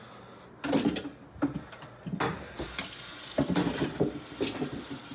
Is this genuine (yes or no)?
yes